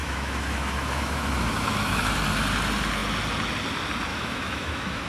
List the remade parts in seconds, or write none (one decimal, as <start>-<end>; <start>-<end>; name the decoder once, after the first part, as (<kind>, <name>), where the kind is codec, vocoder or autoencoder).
0.0-2.0 (autoencoder, DAC-VAE); 4.1-5.1